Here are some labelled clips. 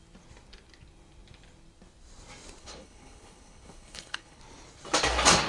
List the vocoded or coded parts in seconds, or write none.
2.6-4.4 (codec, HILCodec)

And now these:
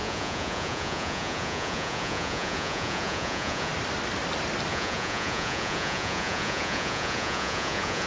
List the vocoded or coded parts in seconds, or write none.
0.0-3.7 (vocoder, Vocos); 4.7-8.1

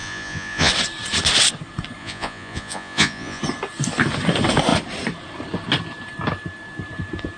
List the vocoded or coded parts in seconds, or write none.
0.0-0.7 (vocoder, Vocos); 2.0-3.4

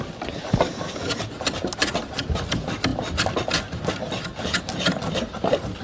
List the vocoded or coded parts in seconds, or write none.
none

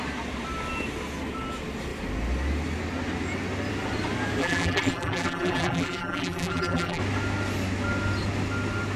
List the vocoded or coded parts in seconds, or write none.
4.4-7.0 (vocoder, BigVGAN v2)

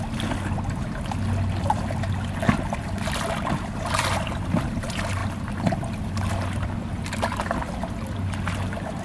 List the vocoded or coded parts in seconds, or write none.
none

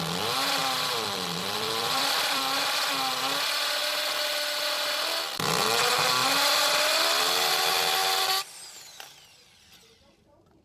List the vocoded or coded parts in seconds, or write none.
0.6-2.9 (vocoder, BigVGAN v2)